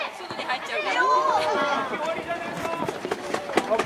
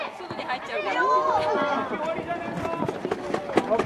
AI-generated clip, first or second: first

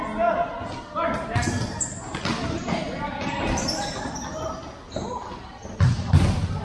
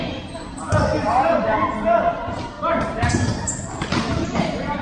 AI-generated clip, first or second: second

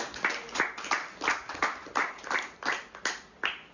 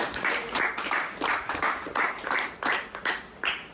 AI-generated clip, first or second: second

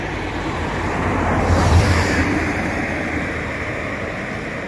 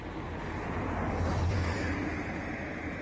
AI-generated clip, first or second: first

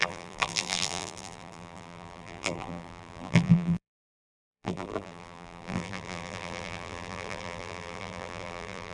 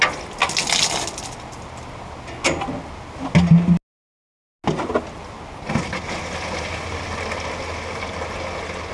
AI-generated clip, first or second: first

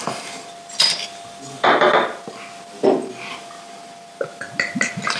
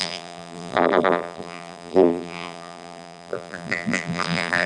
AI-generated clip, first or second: second